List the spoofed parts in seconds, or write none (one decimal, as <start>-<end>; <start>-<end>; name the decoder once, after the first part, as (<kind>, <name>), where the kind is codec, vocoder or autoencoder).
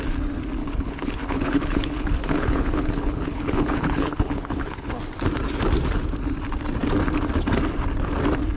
0.6-5.0 (codec, HILCodec)